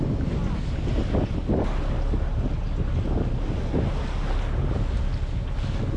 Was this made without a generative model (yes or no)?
yes